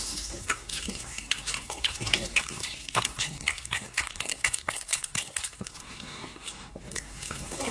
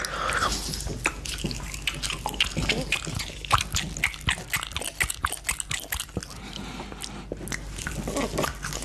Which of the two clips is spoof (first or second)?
first